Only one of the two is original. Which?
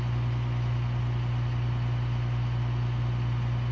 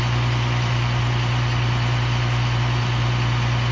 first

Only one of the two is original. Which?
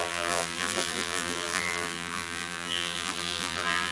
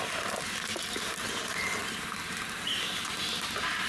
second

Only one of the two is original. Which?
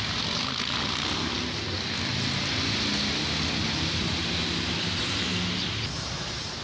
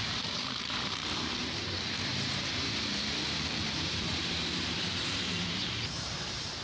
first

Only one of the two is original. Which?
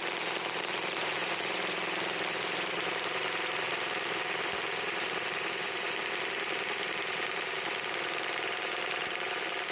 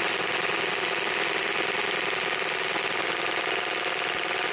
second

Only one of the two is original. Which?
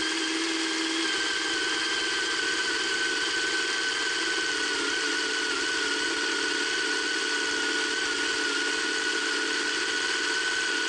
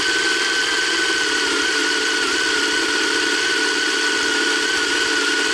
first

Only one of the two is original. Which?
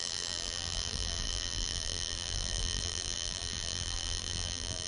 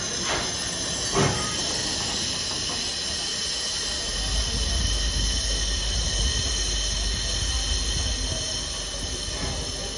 second